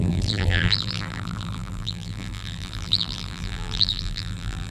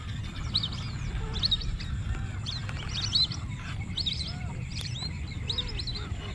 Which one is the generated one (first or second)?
first